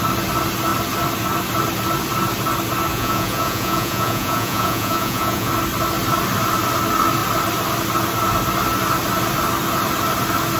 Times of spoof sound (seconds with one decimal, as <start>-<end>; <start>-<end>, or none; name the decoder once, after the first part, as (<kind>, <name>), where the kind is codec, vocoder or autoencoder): 2.9-5.5 (vocoder, Vocos)